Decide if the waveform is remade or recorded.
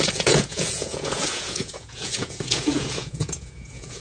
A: remade